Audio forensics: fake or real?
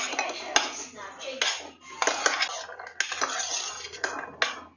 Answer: real